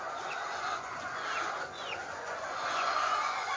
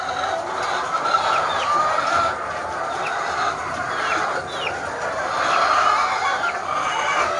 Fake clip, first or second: first